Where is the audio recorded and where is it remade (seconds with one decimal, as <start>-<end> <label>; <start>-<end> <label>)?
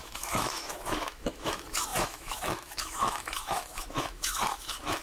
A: 0.0-5.0 remade